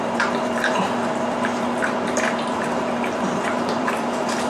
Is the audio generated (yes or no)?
yes